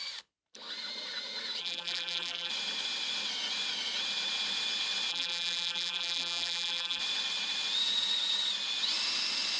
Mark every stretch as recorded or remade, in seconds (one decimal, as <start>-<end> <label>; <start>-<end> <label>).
0.0-1.6 recorded; 1.6-2.5 remade; 2.5-5.1 recorded; 5.1-7.0 remade; 7.0-9.6 recorded